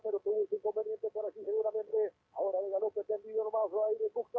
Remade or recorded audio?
recorded